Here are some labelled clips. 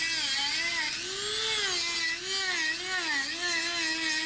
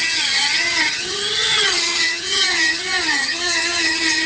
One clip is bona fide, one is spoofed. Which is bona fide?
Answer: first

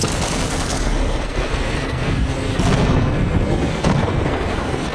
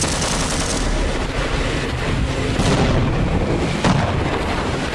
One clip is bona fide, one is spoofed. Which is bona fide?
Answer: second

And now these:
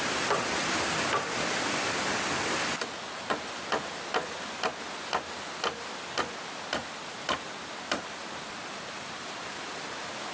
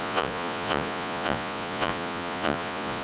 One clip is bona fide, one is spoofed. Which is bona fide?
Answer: first